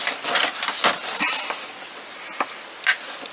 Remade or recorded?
recorded